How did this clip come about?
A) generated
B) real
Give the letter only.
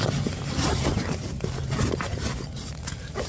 B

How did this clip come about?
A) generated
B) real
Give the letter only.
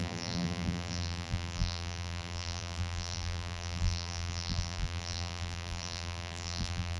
A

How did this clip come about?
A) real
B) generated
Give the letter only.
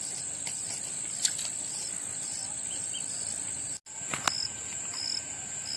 A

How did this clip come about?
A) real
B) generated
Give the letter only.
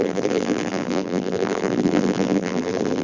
B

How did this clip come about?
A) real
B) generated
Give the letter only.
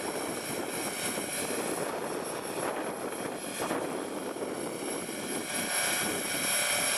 B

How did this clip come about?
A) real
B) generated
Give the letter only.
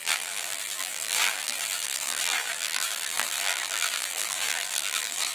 B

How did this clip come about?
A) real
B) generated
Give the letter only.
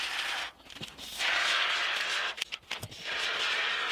B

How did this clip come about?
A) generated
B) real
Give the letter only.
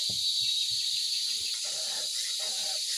A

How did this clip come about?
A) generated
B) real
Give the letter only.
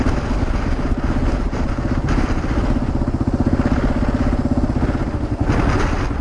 B